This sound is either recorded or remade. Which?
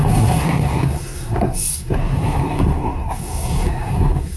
remade